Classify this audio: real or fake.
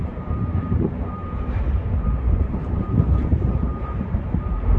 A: fake